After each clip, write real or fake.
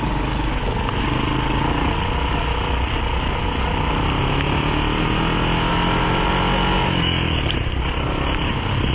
real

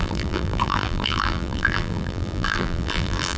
fake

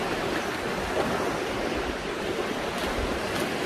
real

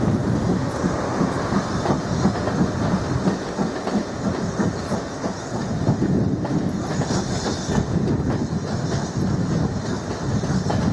real